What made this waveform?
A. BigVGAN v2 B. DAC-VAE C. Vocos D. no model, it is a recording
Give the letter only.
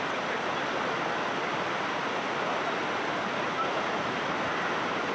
D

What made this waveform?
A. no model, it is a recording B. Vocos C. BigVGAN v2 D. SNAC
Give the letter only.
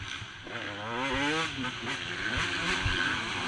A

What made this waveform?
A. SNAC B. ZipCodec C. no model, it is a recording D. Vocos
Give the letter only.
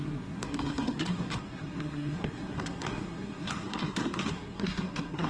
A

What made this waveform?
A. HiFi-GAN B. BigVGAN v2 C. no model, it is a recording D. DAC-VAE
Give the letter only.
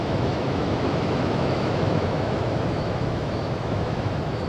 D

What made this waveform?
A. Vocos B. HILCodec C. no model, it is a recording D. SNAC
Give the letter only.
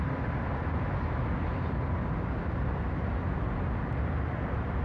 C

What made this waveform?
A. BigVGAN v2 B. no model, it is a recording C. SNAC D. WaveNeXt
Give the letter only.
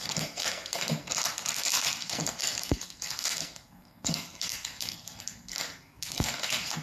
C